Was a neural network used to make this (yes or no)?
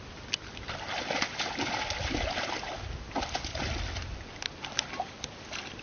no